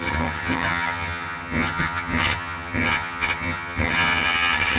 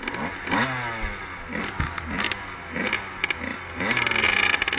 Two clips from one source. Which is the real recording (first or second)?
second